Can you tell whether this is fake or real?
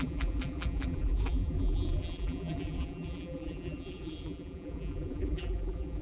fake